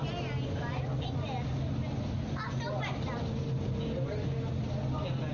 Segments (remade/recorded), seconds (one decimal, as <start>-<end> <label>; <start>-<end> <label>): 0.0-5.3 recorded